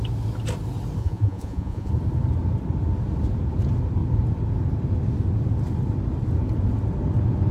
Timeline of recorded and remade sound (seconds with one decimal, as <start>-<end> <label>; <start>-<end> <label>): 0.0-1.0 recorded; 1.0-1.9 remade; 1.9-7.5 recorded